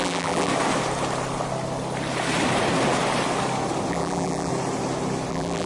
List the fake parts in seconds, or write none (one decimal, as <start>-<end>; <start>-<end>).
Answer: 0.0-0.5; 3.9-4.5; 5.3-5.7